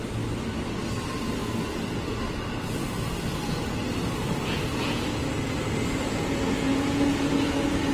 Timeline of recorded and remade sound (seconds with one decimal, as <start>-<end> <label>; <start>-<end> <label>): 0.0-4.7 recorded; 4.7-5.2 remade; 5.2-6.0 recorded; 6.0-7.2 remade; 7.2-7.9 recorded